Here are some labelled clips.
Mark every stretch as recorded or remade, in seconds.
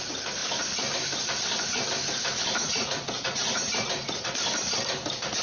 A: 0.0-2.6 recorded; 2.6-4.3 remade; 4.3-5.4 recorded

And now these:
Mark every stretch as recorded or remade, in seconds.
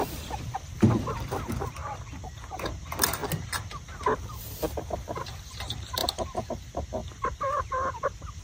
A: 0.0-1.8 remade; 1.8-2.5 recorded; 2.5-3.2 remade; 3.2-3.8 recorded; 3.8-8.4 remade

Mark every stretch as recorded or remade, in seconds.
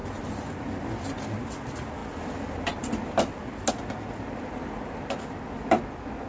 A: 0.0-6.3 recorded